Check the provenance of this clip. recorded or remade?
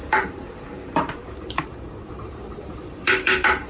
remade